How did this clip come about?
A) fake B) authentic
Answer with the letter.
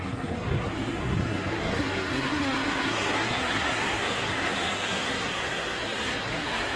A